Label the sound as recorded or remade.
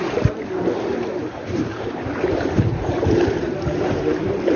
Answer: remade